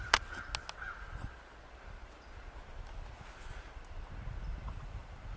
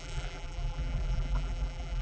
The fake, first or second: second